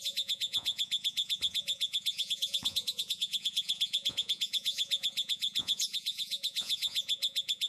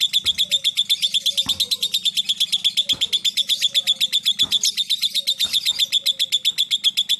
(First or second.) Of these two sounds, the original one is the second